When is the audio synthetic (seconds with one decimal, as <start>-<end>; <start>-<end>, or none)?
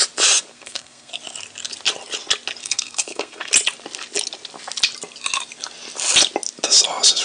0.5-1.1; 2.6-3.5